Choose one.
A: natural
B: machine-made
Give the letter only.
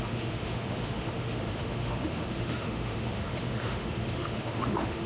B